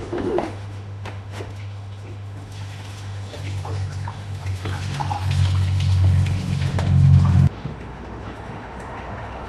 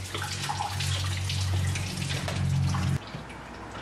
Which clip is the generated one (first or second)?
first